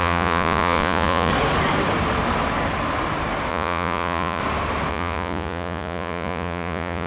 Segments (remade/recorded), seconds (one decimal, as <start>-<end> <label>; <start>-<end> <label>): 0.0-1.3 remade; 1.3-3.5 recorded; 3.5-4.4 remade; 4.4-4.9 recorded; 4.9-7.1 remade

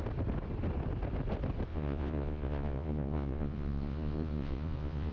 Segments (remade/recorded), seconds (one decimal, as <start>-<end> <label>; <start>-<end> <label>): 0.0-1.7 recorded; 1.7-5.1 remade

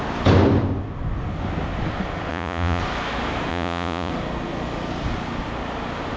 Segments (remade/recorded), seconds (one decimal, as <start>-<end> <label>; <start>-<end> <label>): 0.0-2.3 recorded; 2.3-2.8 remade; 2.8-3.5 recorded; 3.5-4.1 remade; 4.1-6.2 recorded

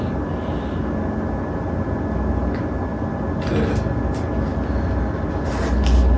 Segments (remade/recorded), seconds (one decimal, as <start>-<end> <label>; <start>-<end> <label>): 0.0-6.2 recorded